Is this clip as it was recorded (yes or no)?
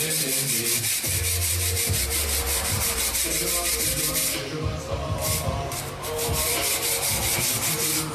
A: no